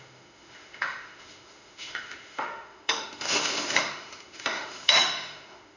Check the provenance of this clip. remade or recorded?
remade